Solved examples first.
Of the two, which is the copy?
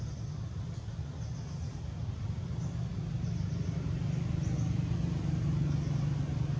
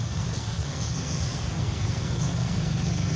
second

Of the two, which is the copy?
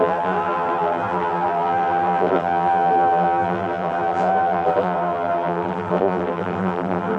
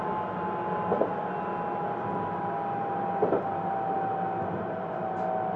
first